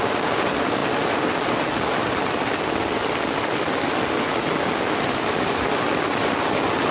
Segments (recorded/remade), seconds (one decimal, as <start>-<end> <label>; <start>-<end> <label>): 0.0-6.9 recorded